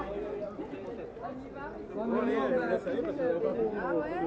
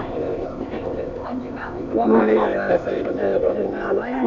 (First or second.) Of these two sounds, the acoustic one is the first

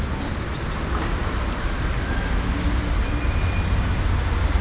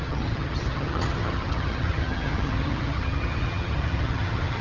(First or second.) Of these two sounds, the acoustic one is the first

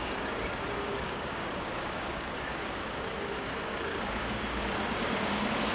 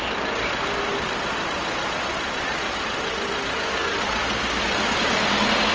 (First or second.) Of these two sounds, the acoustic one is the second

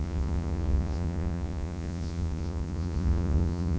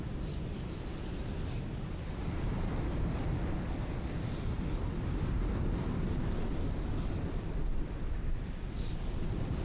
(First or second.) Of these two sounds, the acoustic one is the second